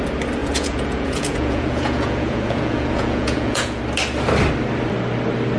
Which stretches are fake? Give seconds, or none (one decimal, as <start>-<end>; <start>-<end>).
0.4-3.8